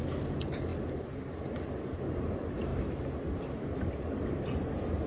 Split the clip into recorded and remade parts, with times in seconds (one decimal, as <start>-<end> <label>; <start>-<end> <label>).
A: 0.0-5.1 recorded